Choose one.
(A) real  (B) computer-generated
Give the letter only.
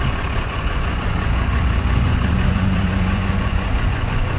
B